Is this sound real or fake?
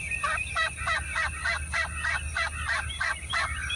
real